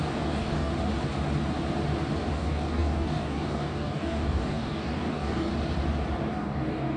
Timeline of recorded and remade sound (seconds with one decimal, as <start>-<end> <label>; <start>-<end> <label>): 0.0-0.7 remade; 0.7-2.3 recorded; 2.3-5.5 remade; 5.5-6.3 recorded; 6.3-7.0 remade